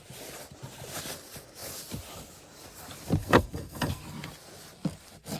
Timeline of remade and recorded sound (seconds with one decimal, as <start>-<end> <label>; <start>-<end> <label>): 0.0-3.2 recorded; 3.2-4.0 remade; 4.0-5.4 recorded